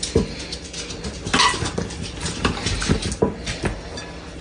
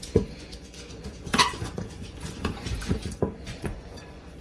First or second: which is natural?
first